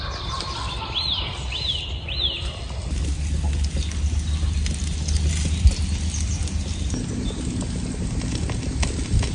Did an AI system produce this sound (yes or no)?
no